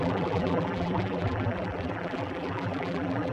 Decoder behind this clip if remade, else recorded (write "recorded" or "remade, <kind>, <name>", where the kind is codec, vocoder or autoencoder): remade, vocoder, BigVGAN v2